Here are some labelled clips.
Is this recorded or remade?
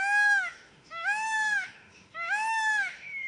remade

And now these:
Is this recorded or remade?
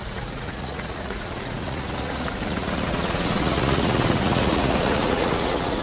remade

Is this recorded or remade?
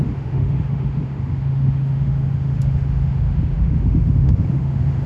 remade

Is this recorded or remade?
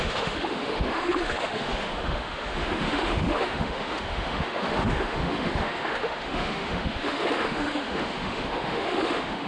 remade